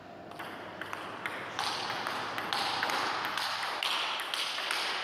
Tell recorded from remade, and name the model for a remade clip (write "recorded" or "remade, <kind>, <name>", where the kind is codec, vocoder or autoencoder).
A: recorded